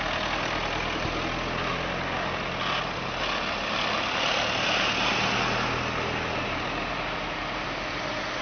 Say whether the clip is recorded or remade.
recorded